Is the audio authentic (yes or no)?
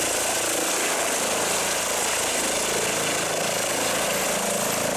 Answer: yes